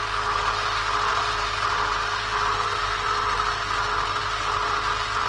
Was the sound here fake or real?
real